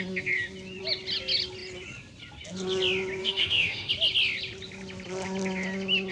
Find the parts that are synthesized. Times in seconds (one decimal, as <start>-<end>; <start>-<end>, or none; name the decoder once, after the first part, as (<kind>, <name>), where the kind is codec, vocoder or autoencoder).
3.2-3.9 (autoencoder, DAC-VAE)